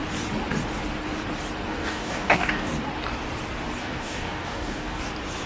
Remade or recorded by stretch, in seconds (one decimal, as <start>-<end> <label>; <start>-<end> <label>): 0.0-1.7 recorded; 1.7-2.7 remade; 2.7-3.8 recorded; 3.8-5.0 remade; 5.0-5.5 recorded